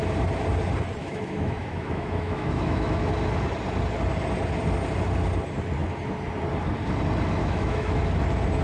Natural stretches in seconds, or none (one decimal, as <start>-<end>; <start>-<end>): 0.0-1.0; 3.1-7.4; 8.0-8.6